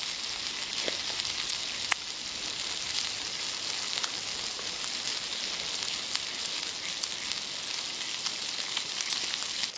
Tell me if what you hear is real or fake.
real